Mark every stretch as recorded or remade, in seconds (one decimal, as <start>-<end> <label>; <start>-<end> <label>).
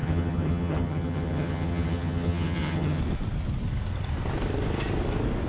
0.0-3.0 remade; 3.0-5.5 recorded